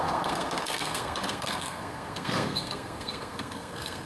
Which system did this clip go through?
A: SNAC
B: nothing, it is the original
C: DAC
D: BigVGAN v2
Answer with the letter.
A